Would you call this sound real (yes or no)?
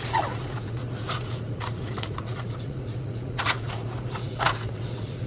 no